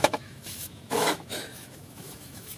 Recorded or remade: remade